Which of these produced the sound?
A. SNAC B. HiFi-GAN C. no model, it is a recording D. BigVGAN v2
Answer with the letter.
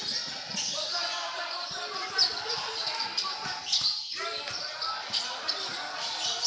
C